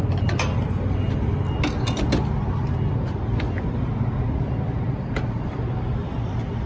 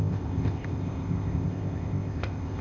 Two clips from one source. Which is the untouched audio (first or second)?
first